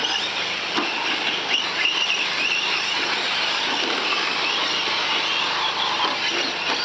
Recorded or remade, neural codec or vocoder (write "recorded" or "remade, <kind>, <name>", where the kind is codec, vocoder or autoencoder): recorded